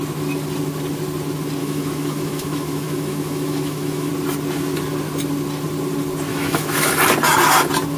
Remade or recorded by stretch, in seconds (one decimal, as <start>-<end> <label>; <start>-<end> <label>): 0.0-1.6 recorded; 1.6-4.1 remade; 4.1-6.3 recorded; 6.3-6.9 remade; 6.9-8.0 recorded